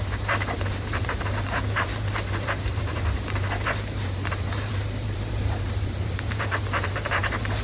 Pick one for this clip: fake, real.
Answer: fake